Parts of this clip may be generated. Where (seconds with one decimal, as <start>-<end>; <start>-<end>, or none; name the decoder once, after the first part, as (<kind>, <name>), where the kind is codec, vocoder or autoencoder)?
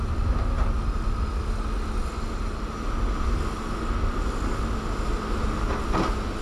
none